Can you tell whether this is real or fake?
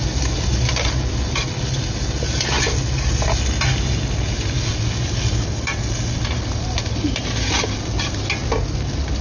real